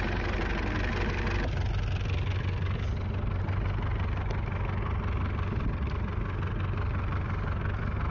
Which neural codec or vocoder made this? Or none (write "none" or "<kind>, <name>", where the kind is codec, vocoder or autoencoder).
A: none